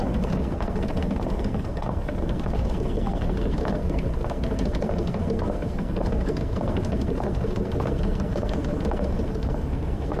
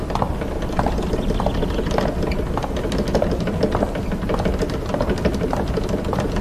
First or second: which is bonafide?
second